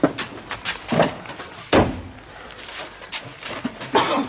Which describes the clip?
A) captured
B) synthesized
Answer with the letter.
A